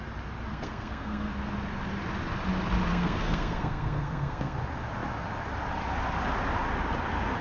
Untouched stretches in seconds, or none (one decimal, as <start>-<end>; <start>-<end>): 0.0-0.5; 1.3-2.9; 4.6-7.4